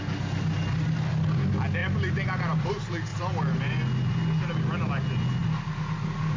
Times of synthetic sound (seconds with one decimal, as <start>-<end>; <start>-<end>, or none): 1.8-2.7; 3.1-3.8